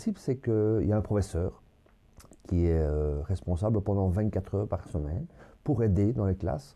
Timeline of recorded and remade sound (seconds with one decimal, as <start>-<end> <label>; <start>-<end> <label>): 0.0-4.8 recorded; 4.8-5.4 remade; 5.4-6.8 recorded